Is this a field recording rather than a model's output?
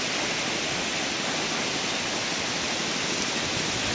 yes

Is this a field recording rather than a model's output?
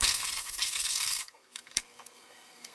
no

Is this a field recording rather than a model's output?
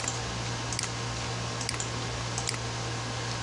yes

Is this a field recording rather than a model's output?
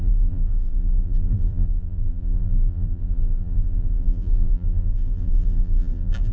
no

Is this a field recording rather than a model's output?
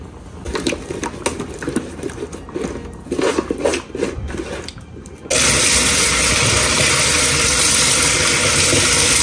yes